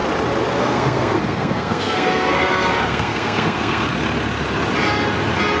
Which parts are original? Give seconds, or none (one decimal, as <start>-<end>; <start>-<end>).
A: 0.0-0.6; 3.9-5.6